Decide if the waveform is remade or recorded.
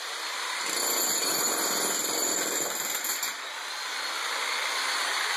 recorded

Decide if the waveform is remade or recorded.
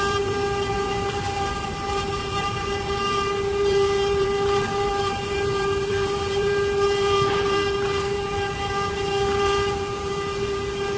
remade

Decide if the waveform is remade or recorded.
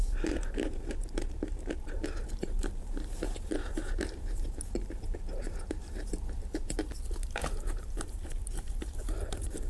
remade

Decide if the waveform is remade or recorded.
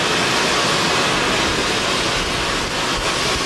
recorded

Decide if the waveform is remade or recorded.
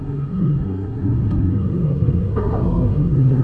remade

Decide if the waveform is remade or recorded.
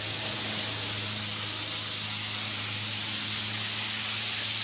recorded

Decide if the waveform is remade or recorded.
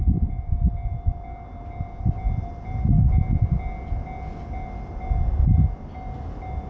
recorded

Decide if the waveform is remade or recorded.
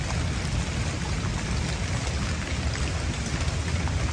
recorded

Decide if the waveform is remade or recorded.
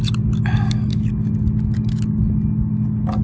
recorded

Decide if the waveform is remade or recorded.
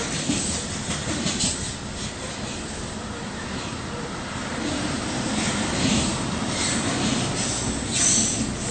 recorded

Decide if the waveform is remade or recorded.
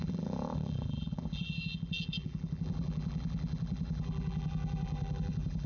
remade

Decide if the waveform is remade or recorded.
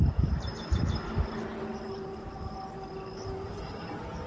recorded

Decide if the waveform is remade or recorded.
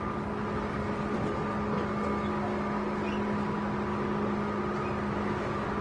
recorded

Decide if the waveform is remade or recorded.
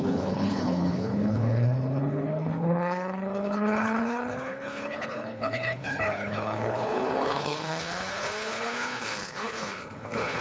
remade